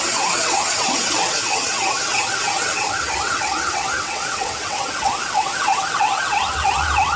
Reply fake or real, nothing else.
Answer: fake